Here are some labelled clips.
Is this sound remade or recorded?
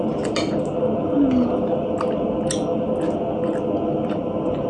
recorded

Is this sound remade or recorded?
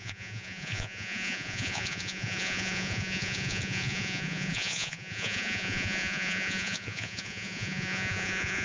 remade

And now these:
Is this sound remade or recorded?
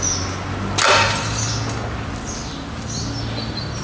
recorded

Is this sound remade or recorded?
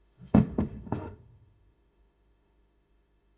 remade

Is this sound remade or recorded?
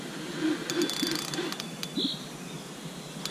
recorded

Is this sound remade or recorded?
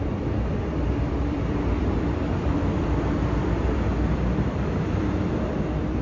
remade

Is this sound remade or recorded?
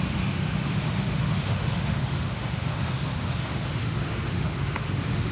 remade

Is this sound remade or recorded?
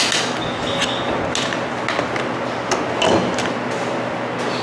recorded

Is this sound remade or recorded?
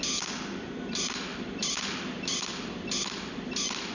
recorded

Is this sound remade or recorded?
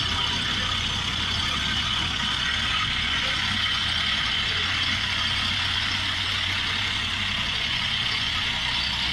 remade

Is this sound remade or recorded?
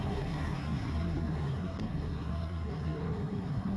remade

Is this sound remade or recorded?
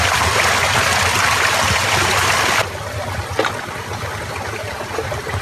recorded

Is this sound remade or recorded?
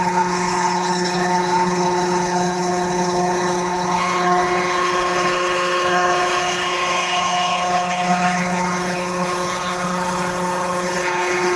remade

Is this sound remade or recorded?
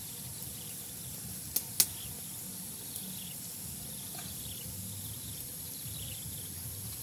recorded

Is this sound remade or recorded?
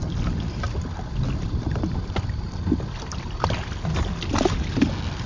recorded